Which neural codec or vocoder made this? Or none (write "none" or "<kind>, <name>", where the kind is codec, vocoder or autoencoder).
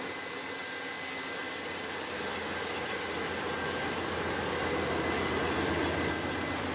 none